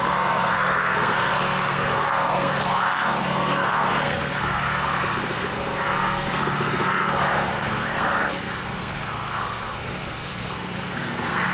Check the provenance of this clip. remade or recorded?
remade